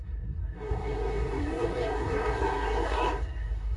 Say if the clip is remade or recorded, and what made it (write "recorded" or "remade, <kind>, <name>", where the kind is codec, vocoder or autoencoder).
remade, codec, SNAC